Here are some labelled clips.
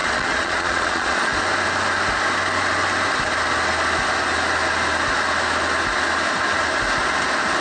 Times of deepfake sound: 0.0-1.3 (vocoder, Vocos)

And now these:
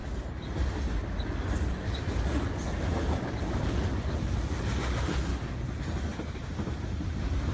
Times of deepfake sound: none

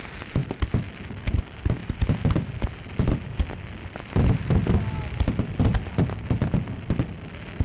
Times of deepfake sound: none

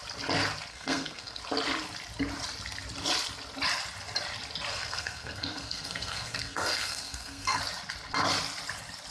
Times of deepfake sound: 0.7-1.4 (codec, SNAC); 4.7-7.6

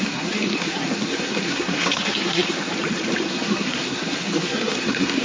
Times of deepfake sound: 0.0-2.7 (codec, SNAC); 3.3-5.2

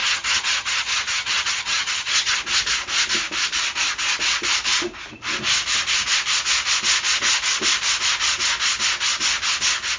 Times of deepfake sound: 0.0-2.4 (vocoder, HiFi-GAN)

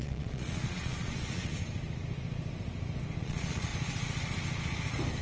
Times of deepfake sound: 0.0-1.6 (vocoder, Vocos); 3.2-3.7